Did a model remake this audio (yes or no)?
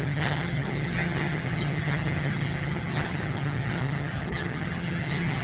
yes